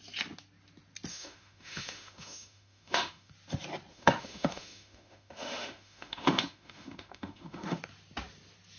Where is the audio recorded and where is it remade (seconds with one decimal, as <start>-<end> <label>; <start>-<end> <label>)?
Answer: 0.0-1.1 recorded; 1.1-3.3 remade; 3.3-3.9 recorded; 3.9-7.8 remade; 7.8-8.8 recorded